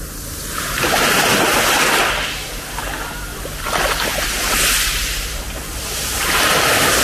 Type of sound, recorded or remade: recorded